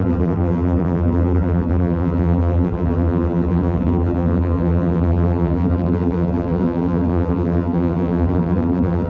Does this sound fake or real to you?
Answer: fake